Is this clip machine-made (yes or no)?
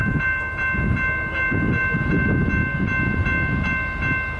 no